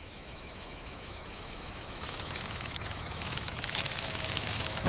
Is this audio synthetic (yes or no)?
yes